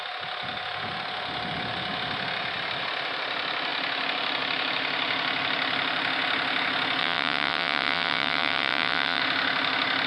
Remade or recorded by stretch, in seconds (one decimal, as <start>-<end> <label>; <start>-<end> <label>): 0.0-7.0 recorded; 7.0-9.2 remade; 9.2-10.1 recorded